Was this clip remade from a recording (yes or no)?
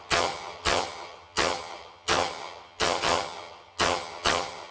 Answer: yes